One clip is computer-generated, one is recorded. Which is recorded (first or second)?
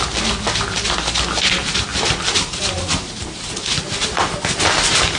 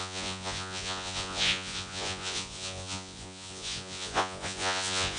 first